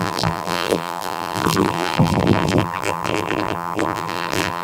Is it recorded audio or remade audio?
remade